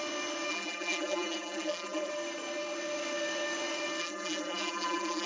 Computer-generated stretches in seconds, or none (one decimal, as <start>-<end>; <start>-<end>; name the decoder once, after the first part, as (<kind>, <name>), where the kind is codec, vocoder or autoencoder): 0.5-2.1 (vocoder, BigVGAN v2); 4.0-5.3